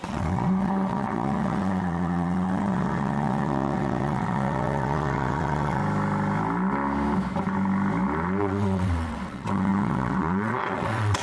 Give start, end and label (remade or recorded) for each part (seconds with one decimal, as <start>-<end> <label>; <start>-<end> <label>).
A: 0.0-5.8 remade; 5.8-8.4 recorded; 8.4-11.2 remade